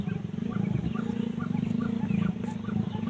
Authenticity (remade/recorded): recorded